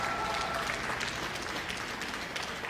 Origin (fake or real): real